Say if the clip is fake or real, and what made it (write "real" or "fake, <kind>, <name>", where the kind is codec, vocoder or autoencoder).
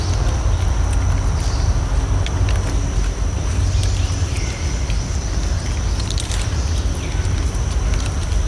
real